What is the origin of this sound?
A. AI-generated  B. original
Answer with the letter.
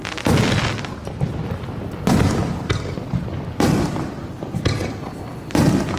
B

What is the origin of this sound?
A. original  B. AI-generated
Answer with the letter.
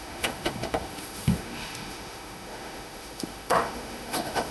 B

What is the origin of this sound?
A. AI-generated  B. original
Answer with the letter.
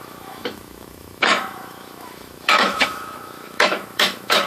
A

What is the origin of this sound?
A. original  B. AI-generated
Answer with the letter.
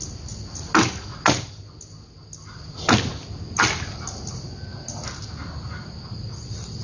A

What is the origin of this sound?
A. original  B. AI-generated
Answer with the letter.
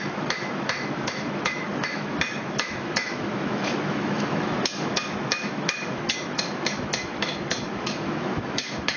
B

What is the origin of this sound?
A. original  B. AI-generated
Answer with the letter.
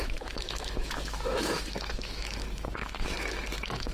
B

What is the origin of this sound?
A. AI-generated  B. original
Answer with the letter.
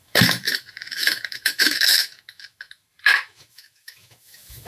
A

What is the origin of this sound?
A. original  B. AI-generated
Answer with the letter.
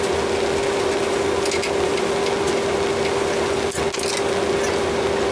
A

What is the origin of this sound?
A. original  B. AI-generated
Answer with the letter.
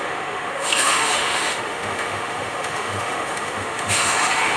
B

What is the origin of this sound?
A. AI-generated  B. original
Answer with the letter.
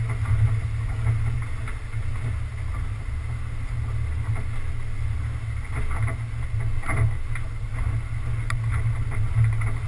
B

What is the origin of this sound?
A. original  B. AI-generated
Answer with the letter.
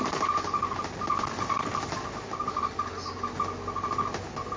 A